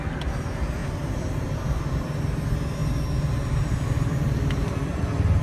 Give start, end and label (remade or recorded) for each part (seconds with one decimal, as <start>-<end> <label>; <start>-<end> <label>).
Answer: 0.0-0.8 recorded; 0.8-1.8 remade; 1.8-2.8 recorded; 2.8-5.4 remade